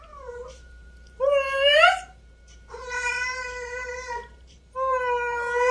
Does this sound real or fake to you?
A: fake